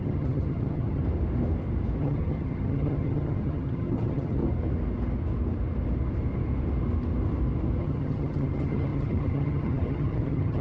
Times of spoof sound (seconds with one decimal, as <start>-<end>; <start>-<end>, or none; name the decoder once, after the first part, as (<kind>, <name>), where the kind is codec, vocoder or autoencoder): 0.0-1.0 (vocoder, HiFi-GAN); 2.0-4.4; 7.8-10.6